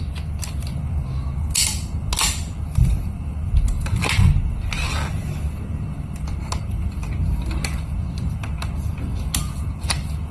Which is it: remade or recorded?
recorded